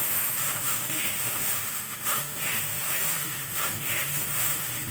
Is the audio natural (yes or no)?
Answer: no